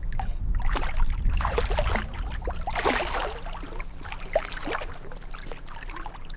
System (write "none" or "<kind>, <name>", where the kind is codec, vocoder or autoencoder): none